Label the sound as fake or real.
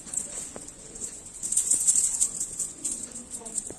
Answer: fake